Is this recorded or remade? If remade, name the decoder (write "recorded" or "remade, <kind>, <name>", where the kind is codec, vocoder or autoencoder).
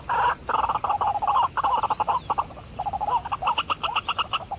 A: recorded